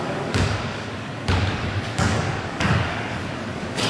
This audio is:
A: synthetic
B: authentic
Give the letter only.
A